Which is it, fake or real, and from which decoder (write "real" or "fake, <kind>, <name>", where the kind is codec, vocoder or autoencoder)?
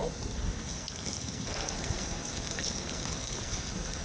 fake, codec, SNAC